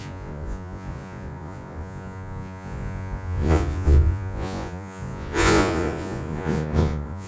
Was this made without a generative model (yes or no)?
no